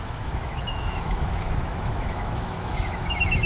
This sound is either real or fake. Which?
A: fake